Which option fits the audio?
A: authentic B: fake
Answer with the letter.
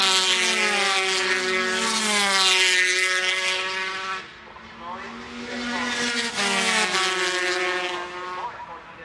A